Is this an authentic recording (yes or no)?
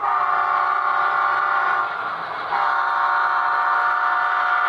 yes